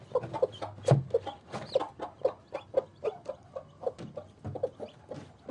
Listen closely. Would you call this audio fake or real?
real